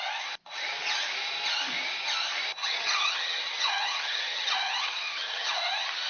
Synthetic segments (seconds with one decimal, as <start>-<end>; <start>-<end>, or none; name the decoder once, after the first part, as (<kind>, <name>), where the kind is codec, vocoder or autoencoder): 2.6-5.6 (vocoder, HiFi-GAN)